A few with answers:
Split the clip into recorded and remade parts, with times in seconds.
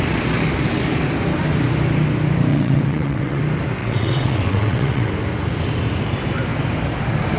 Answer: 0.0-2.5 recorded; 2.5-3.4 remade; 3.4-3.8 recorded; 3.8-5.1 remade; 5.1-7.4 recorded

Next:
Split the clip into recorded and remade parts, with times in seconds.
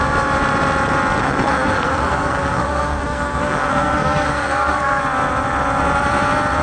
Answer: 0.0-1.2 recorded; 1.2-5.0 remade; 5.0-6.6 recorded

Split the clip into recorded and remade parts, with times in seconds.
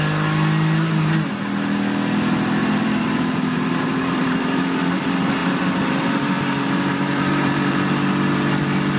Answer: 0.0-2.6 recorded; 2.6-4.8 remade; 4.8-5.4 recorded; 5.4-7.9 remade; 7.9-9.0 recorded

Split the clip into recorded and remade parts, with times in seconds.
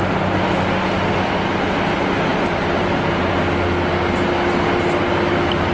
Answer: 0.0-2.3 recorded; 2.3-3.3 remade; 3.3-5.7 recorded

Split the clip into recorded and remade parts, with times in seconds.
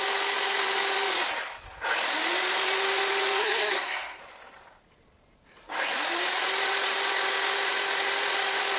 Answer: 0.0-3.4 recorded; 3.4-4.2 remade; 4.2-8.8 recorded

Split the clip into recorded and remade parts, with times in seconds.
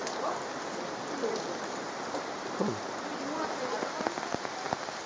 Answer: 0.0-5.1 recorded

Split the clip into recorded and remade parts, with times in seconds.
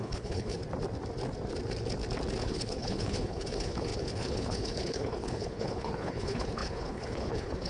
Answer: 0.0-0.6 remade; 0.6-2.4 recorded; 2.4-7.7 remade